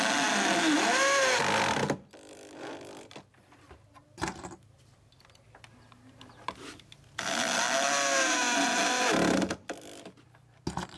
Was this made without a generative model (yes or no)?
yes